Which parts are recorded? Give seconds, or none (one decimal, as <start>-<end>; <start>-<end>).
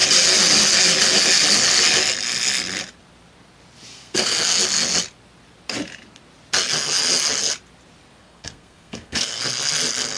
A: 0.0-3.9; 4.6-8.2; 9.4-10.2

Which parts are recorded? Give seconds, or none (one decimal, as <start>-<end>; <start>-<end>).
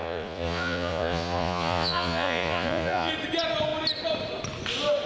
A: 3.1-5.1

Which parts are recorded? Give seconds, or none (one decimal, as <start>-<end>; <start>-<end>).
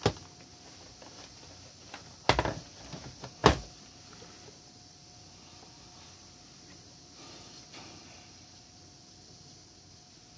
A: 0.0-10.4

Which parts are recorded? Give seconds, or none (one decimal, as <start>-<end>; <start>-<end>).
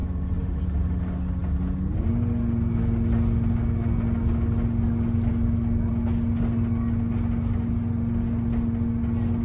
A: 0.0-9.4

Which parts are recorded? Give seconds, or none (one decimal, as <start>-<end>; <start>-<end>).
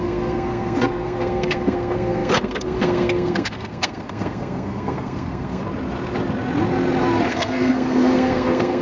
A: 5.6-7.3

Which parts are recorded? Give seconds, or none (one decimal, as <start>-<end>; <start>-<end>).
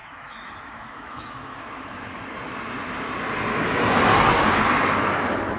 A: 2.2-5.6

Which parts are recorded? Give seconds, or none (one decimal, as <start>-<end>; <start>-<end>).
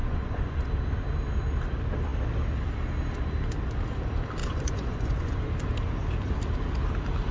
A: 0.7-4.4; 5.4-7.3